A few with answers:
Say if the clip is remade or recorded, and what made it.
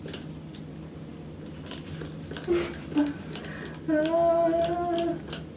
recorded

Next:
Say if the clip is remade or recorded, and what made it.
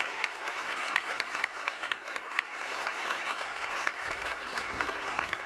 remade, codec, SNAC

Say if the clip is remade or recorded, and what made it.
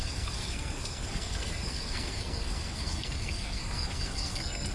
remade, codec, SNAC